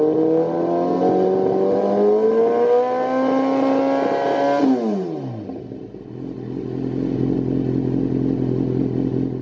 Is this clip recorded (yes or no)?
yes